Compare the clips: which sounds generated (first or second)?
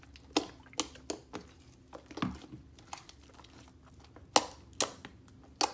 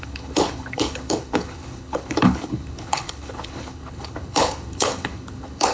second